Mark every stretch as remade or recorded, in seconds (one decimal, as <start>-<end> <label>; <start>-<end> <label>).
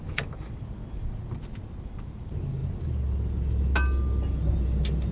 0.0-5.1 recorded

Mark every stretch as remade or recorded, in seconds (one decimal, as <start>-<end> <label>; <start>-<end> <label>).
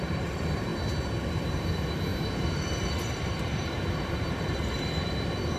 0.0-0.7 remade; 0.7-1.3 recorded; 1.3-5.6 remade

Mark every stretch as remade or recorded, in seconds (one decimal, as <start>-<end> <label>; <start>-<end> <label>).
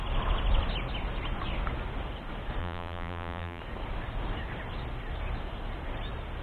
0.0-2.6 recorded; 2.6-3.6 remade; 3.6-6.4 recorded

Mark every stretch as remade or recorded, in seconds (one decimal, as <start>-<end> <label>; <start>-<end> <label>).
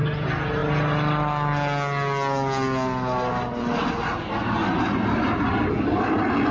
0.0-6.5 recorded